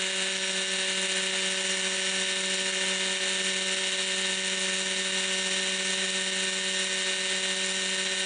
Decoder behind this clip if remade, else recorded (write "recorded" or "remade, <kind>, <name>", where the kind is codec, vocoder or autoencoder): recorded